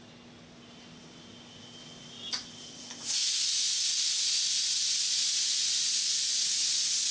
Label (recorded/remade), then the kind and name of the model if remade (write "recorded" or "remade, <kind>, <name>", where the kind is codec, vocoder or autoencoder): recorded